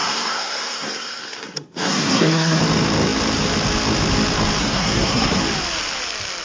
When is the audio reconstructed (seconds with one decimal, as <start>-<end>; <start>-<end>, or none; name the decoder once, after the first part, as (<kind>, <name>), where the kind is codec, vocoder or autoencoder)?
0.0-2.6 (codec, SNAC); 4.6-5.4